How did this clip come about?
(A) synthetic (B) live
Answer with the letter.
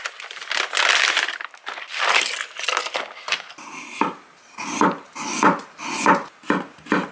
B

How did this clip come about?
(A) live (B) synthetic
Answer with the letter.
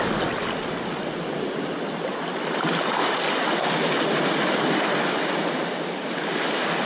A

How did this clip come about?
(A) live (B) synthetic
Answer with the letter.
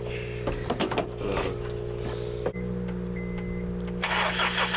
A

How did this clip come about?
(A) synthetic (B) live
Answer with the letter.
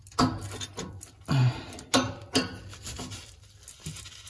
B